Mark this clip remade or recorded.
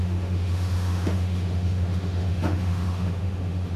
remade